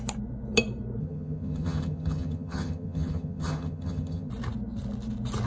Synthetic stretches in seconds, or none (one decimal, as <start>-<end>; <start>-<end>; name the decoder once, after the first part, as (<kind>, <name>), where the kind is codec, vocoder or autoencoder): 1.0-4.3 (vocoder, HiFi-GAN)